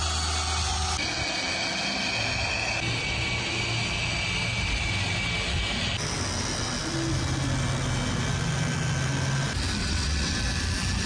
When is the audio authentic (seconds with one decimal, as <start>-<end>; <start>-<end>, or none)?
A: 0.0-9.8; 10.4-11.1

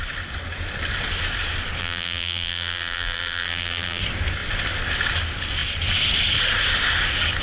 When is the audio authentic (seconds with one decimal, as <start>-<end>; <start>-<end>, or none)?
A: 0.0-1.8; 4.0-7.4